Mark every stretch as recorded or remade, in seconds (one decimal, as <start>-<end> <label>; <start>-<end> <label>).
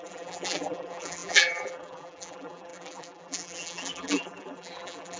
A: 0.0-5.2 remade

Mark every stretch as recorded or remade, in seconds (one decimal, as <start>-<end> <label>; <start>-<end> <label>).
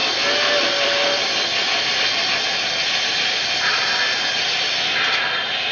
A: 0.0-2.0 remade; 2.0-2.5 recorded; 2.5-3.8 remade; 3.8-5.7 recorded